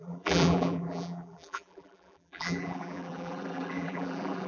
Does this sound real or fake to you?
fake